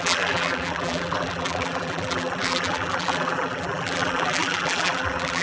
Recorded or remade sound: remade